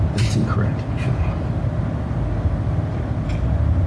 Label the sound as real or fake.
real